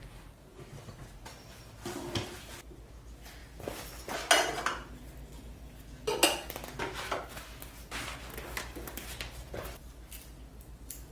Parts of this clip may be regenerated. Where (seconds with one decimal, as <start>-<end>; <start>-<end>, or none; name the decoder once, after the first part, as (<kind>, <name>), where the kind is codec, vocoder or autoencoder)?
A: none